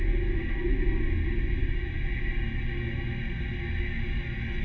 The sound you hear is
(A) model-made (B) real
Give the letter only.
B